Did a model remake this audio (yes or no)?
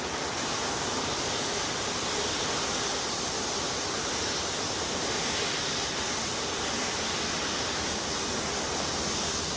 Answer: no